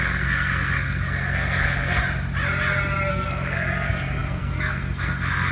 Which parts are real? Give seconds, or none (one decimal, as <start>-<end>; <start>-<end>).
2.0-3.1